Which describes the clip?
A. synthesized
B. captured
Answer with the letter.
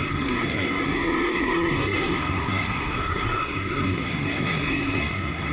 A